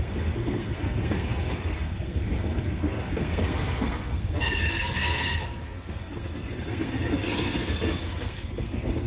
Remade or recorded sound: remade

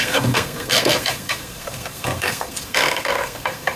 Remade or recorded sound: remade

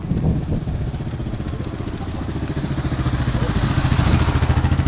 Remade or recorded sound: recorded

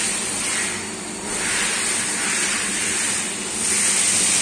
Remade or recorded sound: recorded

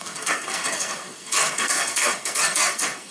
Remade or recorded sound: remade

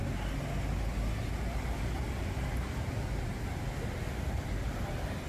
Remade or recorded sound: recorded